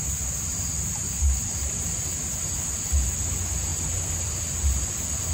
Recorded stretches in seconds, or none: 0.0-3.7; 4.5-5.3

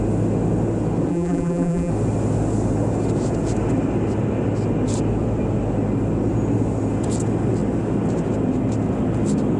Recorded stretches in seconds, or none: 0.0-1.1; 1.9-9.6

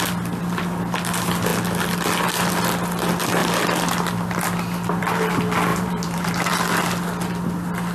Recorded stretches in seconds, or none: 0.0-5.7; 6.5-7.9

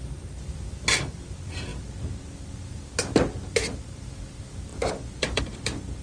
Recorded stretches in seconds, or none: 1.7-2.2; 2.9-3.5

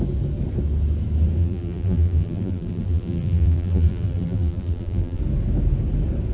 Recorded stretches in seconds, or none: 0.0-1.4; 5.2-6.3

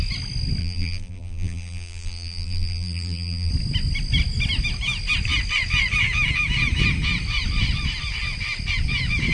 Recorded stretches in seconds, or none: 0.0-0.6; 3.5-9.3

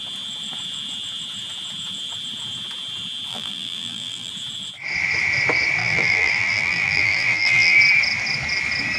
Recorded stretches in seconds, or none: 0.0-3.3; 4.3-5.8; 7.8-9.0